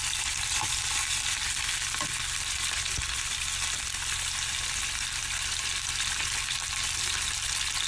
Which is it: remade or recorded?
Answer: remade